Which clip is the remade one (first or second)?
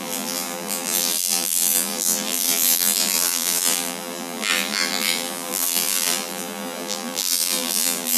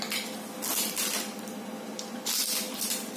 first